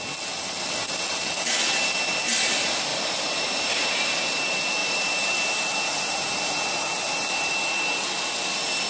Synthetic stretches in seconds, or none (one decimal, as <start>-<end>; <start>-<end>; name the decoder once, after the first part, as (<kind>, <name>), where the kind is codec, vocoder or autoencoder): 2.9-4.2 (vocoder, BigVGAN v2); 4.8-7.5